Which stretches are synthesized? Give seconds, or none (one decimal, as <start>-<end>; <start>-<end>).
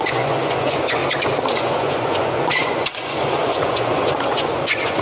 0.0-1.0; 1.6-5.0